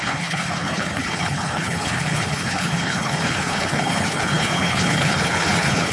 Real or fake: fake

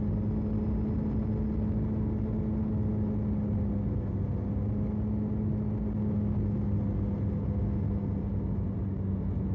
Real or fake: real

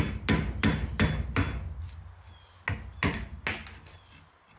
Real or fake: real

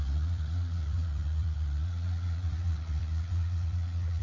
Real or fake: fake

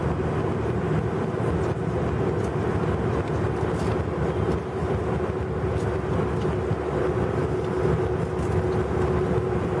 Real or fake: real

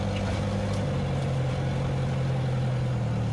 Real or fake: real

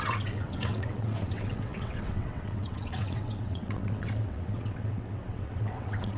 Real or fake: fake